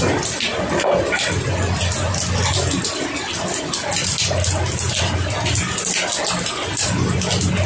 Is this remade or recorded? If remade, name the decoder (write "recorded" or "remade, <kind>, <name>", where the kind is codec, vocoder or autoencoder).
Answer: recorded